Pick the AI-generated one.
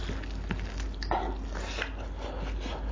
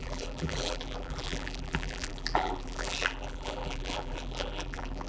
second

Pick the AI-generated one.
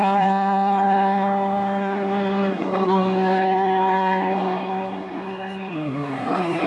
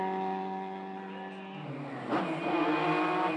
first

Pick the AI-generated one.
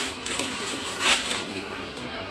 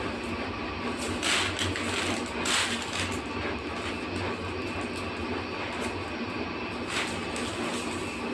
first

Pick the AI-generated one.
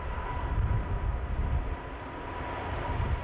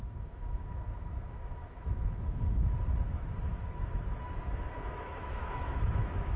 second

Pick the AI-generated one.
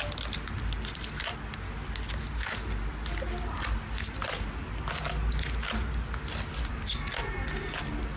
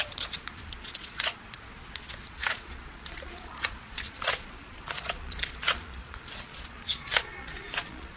second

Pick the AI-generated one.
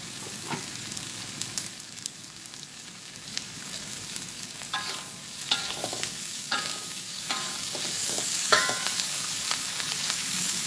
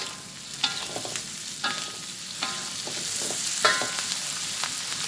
first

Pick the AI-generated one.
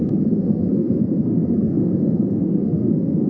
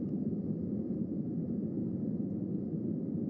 first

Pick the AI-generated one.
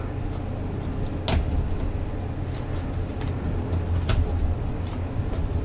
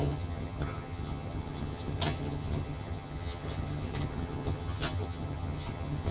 second